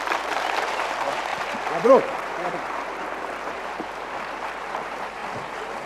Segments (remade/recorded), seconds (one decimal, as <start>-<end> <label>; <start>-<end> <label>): 0.0-5.9 remade